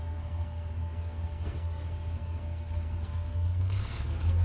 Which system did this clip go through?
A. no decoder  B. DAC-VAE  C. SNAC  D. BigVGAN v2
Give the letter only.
C